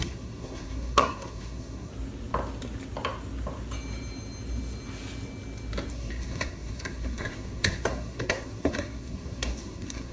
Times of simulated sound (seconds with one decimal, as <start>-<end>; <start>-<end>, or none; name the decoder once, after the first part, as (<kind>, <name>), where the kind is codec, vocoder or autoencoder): 0.0-1.9 (codec, SNAC); 5.9-10.1